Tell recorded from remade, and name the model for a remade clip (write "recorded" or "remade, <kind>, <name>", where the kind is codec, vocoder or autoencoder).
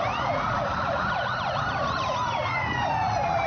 remade, vocoder, Vocos